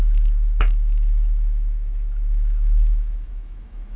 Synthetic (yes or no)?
yes